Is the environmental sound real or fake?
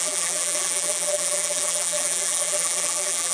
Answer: fake